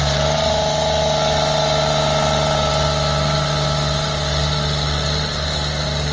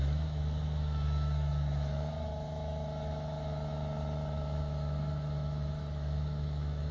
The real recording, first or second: first